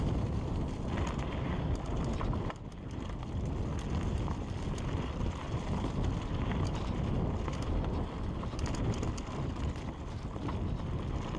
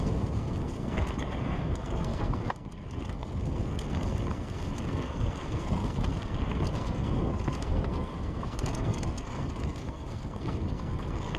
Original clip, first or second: first